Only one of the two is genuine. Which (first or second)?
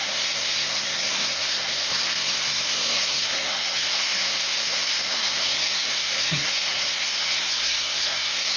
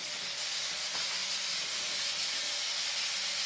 second